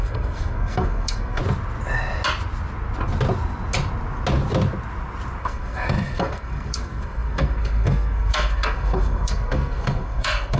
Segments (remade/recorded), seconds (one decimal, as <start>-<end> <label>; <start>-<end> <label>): 0.0-1.4 remade; 1.4-5.4 recorded; 5.4-10.6 remade